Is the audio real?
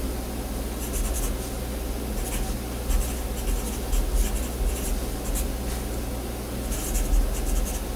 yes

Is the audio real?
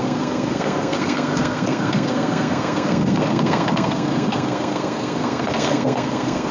no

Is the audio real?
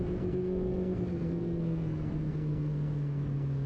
no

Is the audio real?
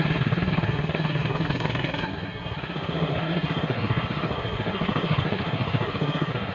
no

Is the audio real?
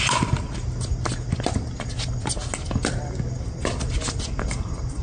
yes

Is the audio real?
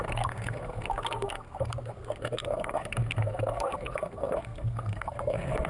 no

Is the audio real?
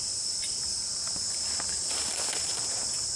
yes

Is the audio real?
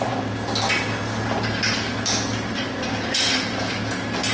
yes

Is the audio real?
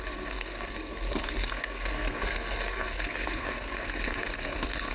no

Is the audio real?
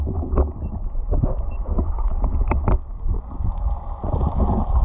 yes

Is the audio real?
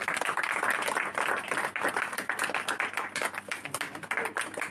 yes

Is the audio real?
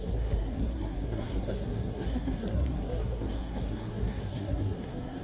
no